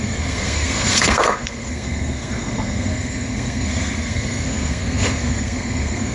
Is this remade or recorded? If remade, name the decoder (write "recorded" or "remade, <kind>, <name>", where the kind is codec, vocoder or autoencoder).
remade, codec, SNAC